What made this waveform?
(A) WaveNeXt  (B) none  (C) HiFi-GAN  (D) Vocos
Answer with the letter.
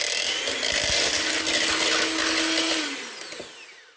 B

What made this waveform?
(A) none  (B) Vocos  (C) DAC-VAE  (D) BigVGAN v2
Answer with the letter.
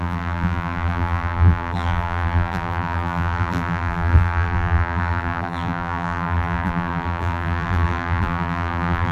D